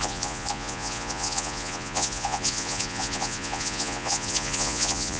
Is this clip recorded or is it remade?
remade